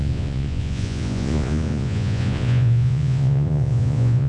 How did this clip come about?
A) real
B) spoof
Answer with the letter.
B